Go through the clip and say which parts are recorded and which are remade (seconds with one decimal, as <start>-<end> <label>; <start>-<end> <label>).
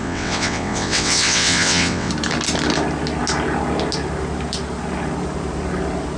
0.0-2.1 remade; 2.1-6.2 recorded